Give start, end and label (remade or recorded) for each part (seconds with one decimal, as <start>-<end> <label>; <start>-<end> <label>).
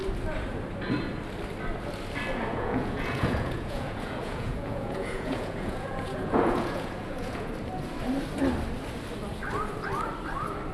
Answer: 0.0-2.5 recorded; 2.5-7.5 remade; 7.5-10.7 recorded